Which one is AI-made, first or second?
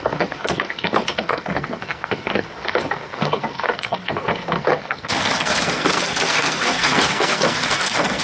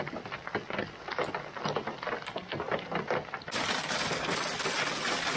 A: first